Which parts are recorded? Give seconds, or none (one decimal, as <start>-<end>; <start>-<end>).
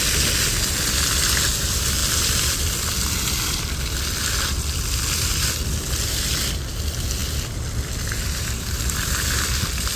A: 0.0-10.0